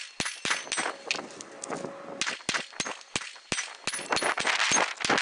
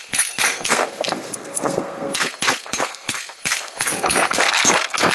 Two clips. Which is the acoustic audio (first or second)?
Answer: first